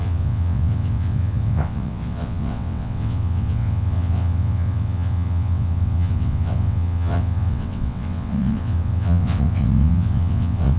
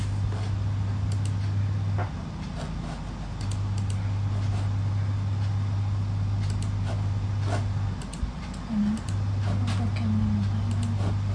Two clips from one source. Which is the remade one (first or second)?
first